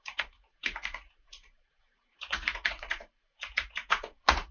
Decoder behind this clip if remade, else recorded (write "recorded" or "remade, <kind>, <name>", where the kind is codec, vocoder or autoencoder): remade, vocoder, Vocos